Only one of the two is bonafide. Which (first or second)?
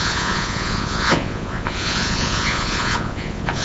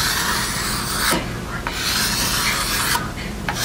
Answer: second